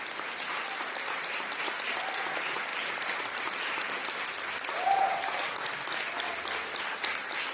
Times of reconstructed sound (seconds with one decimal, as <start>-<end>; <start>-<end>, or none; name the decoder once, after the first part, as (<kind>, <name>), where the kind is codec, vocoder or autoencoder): none